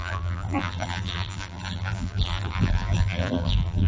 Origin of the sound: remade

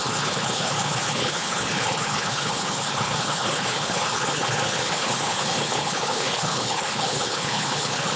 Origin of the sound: remade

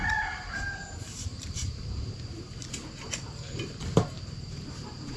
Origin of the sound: remade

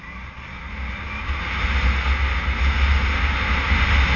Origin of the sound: recorded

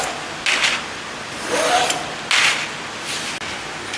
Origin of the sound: recorded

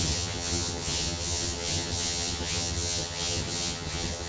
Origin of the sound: remade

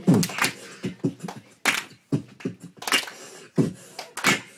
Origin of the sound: recorded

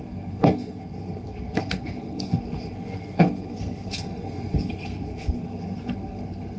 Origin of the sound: remade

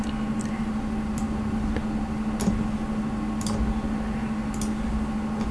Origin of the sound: recorded